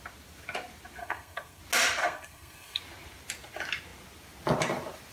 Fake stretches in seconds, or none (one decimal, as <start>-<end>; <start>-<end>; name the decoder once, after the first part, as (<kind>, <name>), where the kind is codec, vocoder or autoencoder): 1.0-1.6 (codec, SNAC); 2.0-2.8